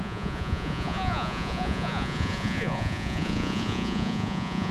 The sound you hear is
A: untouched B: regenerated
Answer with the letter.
B